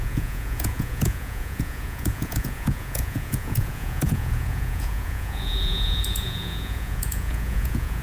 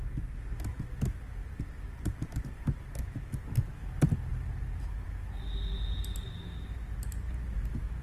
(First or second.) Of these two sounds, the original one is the second